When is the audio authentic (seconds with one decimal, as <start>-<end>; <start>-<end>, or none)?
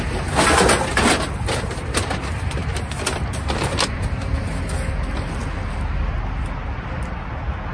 0.0-7.7